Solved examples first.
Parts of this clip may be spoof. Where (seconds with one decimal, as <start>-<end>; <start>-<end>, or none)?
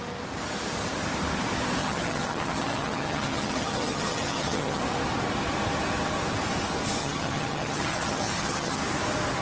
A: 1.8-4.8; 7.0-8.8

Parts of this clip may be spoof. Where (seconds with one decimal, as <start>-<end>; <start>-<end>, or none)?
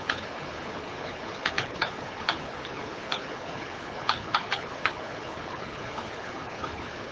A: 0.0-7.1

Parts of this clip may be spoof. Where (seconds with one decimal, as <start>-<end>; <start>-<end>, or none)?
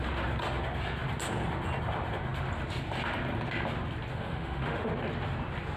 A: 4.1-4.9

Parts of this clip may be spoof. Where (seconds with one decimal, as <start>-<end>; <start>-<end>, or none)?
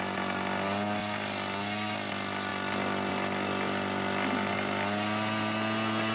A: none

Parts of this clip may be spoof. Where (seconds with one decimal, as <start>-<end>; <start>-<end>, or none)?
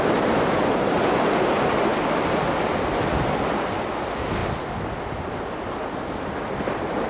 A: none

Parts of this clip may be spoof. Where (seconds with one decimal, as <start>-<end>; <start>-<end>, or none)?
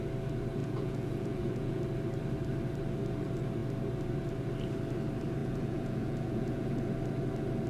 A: 0.6-1.8; 5.4-6.9